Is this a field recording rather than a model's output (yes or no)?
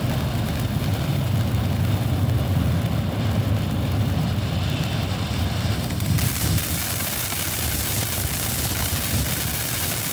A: yes